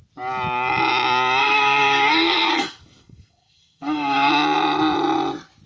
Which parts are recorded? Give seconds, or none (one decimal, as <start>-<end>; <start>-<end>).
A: 0.0-1.4; 4.3-5.7